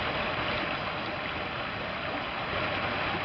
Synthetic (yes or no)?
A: no